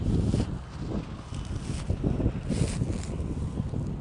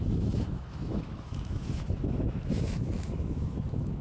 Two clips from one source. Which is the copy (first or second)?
second